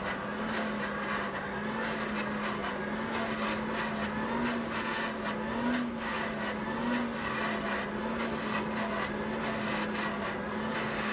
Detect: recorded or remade recorded